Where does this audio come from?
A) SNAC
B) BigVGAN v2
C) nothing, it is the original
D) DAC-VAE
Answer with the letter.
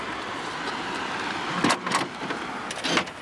C